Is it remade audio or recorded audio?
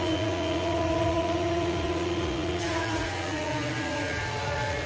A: remade